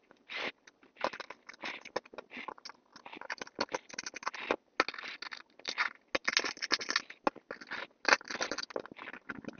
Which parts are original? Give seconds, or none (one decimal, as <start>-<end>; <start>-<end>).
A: 0.0-9.6